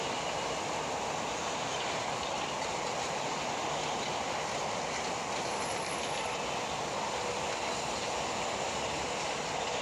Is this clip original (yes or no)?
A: yes